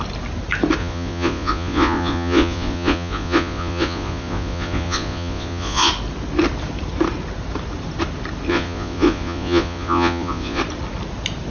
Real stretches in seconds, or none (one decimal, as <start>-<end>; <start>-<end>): 0.0-0.8; 5.9-8.5; 10.6-11.5